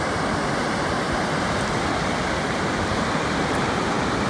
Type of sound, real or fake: real